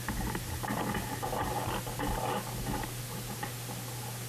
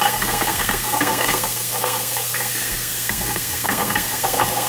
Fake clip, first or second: second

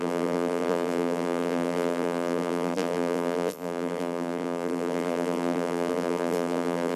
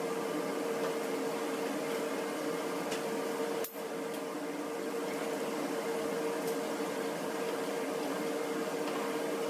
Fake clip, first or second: first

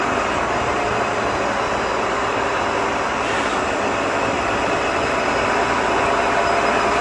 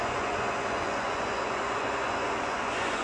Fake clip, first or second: second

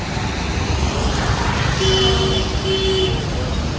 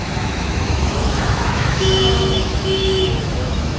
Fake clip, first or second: second